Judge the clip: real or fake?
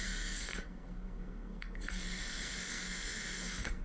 fake